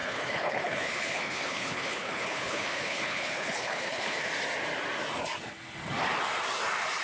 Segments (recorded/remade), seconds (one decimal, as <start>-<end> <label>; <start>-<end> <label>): 0.0-4.2 remade; 4.2-7.0 recorded